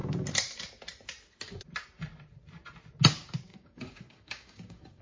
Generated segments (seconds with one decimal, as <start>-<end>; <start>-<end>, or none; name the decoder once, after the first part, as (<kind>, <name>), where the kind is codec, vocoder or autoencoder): 3.5-5.0 (codec, DAC)